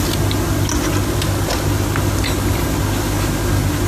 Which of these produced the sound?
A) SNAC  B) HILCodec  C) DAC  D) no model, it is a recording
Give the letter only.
D